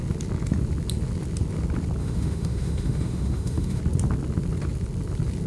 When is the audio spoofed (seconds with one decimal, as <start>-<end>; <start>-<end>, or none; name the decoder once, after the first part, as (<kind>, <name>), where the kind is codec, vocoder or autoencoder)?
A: 2.0-3.8 (autoencoder, DAC-VAE)